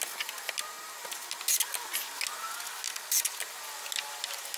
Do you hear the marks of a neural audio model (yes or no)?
no